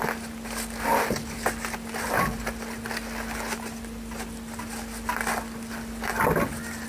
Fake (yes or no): no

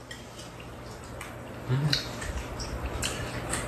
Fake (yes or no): no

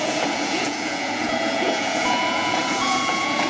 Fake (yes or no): yes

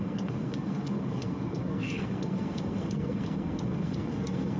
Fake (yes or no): yes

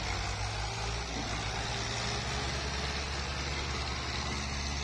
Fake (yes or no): no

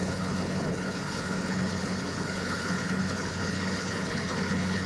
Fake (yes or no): yes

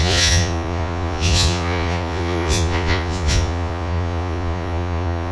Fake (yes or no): yes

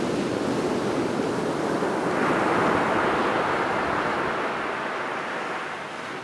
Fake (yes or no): no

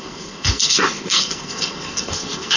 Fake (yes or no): yes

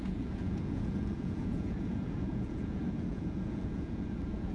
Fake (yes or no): yes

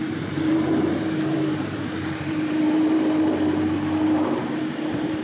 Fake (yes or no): yes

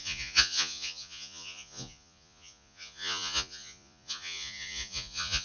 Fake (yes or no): yes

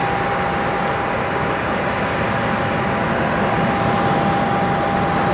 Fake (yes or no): no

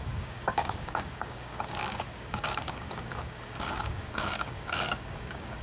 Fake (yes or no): yes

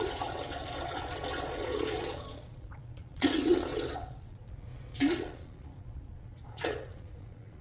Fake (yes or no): yes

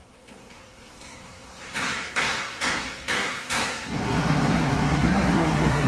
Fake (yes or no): yes